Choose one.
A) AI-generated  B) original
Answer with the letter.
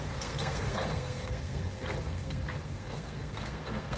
A